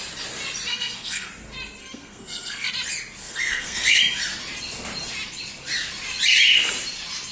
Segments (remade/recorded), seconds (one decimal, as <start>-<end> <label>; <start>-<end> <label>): 0.0-0.7 recorded; 0.7-1.3 remade; 1.3-1.8 recorded; 1.8-2.7 remade; 2.7-3.2 recorded; 3.2-4.0 remade; 4.0-7.3 recorded